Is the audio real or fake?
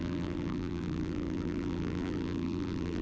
fake